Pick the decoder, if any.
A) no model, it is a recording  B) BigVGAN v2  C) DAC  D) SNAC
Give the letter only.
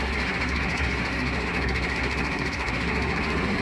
D